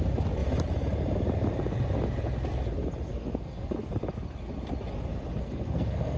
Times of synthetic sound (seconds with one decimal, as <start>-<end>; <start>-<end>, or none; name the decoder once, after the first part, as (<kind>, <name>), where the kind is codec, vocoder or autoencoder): 3.1-3.9 (codec, SNAC); 5.4-6.2